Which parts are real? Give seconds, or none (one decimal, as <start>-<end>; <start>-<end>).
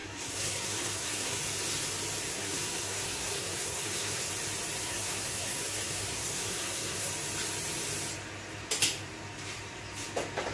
1.4-2.3; 4.3-4.8; 7.1-10.5